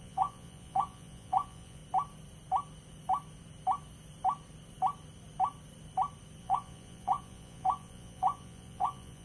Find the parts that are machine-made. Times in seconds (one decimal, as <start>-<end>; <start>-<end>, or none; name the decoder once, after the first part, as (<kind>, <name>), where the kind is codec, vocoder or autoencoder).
0.0-1.8 (vocoder, Vocos); 6.4-9.2